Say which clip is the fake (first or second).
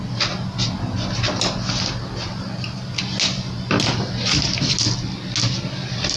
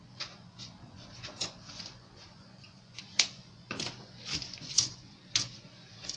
second